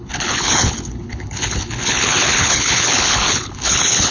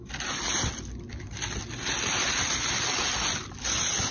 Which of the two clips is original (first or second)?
second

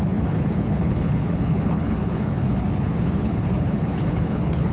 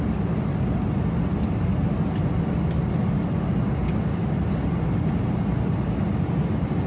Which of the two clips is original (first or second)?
second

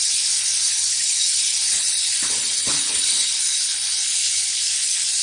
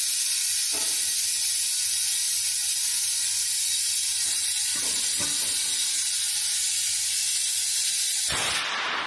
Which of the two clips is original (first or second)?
second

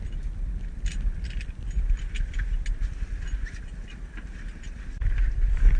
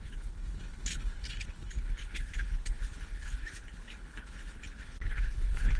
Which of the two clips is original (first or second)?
first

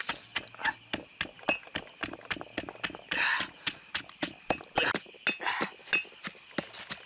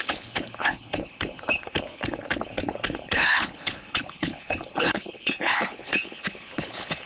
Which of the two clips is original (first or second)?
first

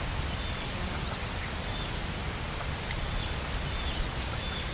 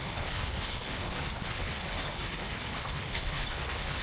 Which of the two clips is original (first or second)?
first